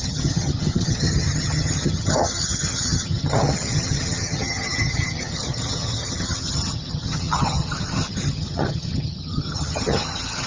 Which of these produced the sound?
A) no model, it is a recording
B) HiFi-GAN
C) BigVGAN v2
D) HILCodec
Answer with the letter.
B